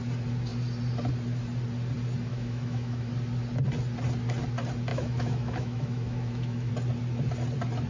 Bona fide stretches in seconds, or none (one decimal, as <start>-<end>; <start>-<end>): 0.0-2.3; 3.1-4.9; 6.7-7.9